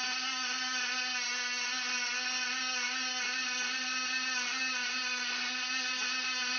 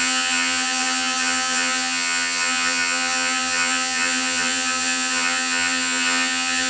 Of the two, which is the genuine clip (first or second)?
first